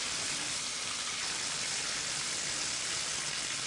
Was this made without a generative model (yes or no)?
yes